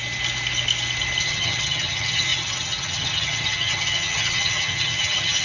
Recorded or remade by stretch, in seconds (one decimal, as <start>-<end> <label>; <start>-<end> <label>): 0.0-1.2 recorded; 1.2-5.4 remade